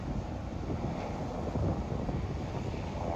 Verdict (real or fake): real